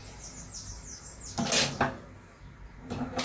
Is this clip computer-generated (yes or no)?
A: no